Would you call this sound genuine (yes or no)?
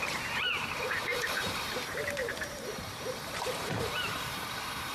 no